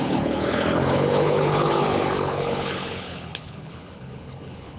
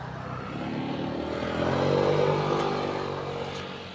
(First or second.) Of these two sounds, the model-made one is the first